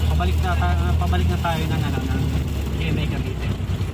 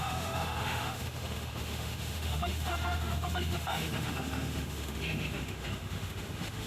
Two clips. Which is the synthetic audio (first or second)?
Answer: second